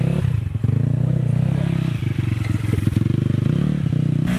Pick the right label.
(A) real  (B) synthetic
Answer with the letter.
A